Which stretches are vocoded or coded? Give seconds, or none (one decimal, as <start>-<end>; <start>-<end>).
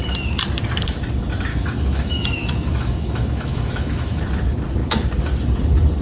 1.5-4.2